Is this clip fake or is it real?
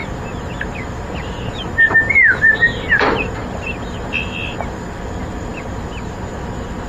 real